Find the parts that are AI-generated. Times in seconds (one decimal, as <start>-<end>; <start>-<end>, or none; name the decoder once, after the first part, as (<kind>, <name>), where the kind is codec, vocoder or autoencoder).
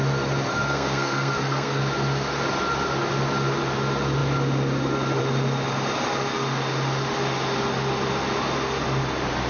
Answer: 0.5-1.8 (codec, SNAC)